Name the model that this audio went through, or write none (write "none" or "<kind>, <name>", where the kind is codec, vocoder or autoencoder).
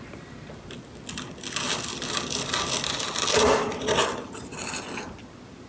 none